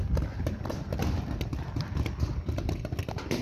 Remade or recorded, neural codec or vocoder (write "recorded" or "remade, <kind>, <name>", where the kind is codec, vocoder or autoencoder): recorded